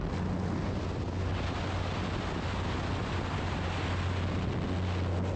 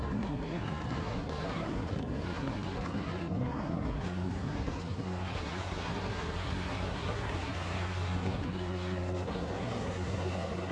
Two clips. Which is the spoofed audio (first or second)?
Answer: second